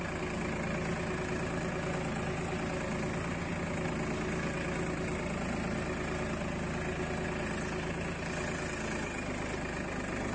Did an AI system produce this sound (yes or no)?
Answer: no